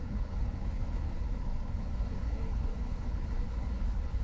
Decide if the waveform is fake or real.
fake